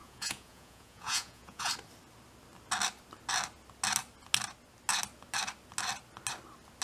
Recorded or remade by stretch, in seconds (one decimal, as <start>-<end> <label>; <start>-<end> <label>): 0.0-1.7 remade; 1.7-6.8 recorded